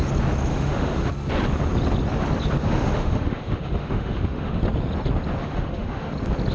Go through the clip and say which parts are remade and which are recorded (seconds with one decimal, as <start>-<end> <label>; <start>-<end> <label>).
0.0-0.5 recorded; 0.5-1.1 remade; 1.1-2.6 recorded; 2.6-4.6 remade; 4.6-5.4 recorded; 5.4-6.1 remade; 6.1-6.5 recorded